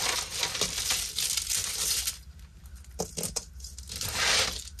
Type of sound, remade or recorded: recorded